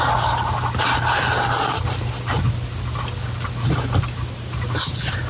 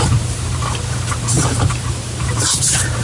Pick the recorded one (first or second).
first